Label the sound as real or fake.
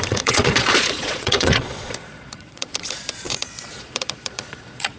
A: fake